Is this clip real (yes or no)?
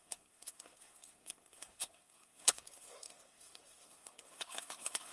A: no